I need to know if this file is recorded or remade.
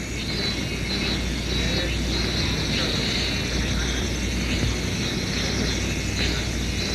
recorded